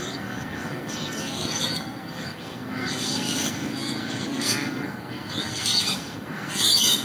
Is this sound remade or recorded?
remade